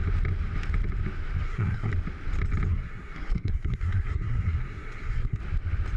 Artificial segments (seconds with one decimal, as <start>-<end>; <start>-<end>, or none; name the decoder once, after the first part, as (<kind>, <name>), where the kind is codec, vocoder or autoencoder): 1.4-1.9 (codec, SNAC); 2.7-5.4